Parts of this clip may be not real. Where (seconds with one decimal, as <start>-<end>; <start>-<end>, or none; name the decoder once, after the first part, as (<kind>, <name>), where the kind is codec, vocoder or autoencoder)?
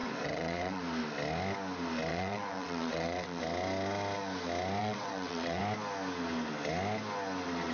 0.0-0.8 (vocoder, WaveNeXt); 2.1-3.4; 4.8-5.6